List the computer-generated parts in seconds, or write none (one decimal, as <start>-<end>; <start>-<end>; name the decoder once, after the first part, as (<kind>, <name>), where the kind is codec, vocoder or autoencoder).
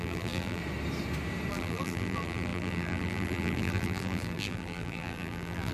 0.0-0.6 (vocoder, BigVGAN v2); 1.5-5.7